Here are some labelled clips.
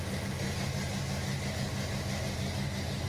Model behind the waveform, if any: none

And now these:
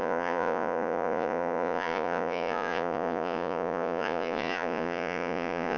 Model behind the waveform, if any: vocoder, Vocos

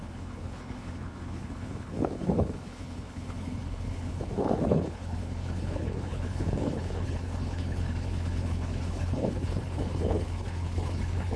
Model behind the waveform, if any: codec, HILCodec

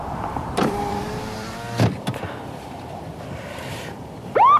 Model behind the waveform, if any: vocoder, BigVGAN v2